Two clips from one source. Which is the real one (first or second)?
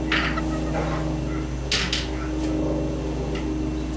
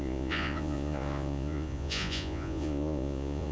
first